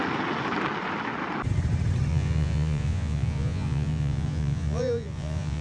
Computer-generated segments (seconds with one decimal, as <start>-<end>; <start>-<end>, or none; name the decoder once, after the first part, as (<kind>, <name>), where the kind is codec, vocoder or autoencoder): 2.1-5.6 (vocoder, Vocos)